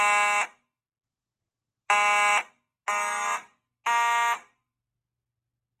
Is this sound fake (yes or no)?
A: no